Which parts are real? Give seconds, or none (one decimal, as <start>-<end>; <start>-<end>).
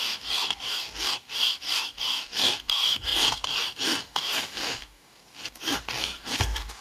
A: none